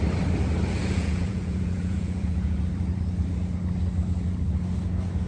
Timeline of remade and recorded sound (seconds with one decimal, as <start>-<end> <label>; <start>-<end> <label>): 0.0-0.8 recorded; 0.8-2.6 remade; 2.6-5.3 recorded